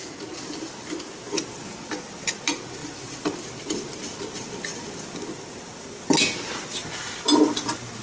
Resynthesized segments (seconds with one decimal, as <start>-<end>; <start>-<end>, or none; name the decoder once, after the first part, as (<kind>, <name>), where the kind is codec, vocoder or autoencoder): 0.0-0.6 (vocoder, BigVGAN v2); 2.8-3.3